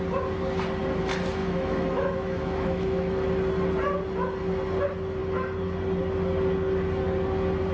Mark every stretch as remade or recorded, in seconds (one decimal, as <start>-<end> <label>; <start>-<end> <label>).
0.0-1.4 recorded; 1.4-3.3 remade; 3.3-7.7 recorded

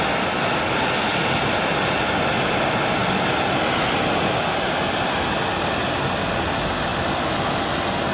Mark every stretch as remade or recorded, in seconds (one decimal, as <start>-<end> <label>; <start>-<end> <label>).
0.0-8.1 recorded